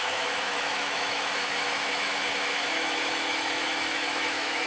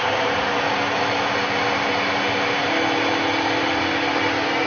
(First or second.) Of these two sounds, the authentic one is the second